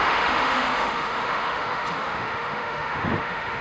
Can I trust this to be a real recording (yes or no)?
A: no